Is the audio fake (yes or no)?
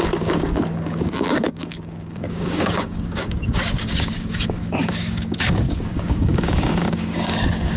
yes